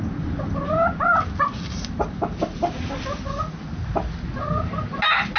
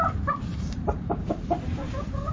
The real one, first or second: first